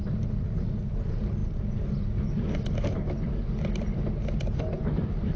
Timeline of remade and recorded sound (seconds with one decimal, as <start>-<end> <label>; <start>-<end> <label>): 0.0-5.4 recorded